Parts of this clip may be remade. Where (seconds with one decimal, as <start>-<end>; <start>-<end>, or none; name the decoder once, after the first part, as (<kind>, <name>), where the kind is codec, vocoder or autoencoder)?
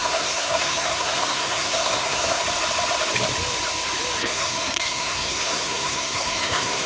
0.0-2.4 (codec, SNAC); 4.2-6.9